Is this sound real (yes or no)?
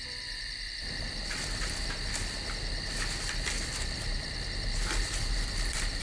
no